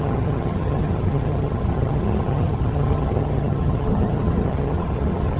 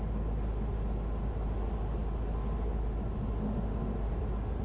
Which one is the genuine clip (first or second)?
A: second